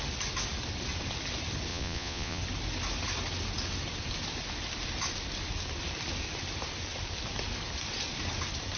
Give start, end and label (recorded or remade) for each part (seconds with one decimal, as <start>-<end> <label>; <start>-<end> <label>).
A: 0.0-1.7 recorded; 1.7-2.4 remade; 2.4-8.8 recorded